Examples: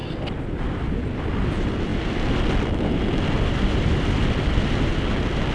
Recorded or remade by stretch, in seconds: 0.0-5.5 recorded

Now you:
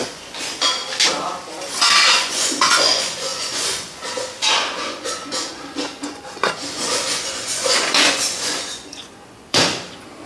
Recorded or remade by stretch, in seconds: 0.0-0.8 remade; 0.8-1.8 recorded; 1.8-10.3 remade